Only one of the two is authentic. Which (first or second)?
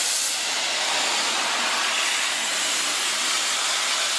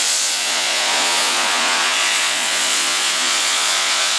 first